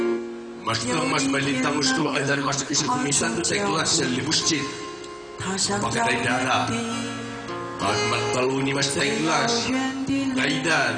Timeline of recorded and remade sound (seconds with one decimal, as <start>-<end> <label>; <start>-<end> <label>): 0.0-2.0 recorded; 2.0-2.9 remade; 2.9-11.0 recorded